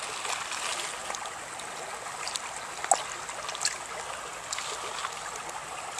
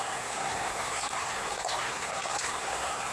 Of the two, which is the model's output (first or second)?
second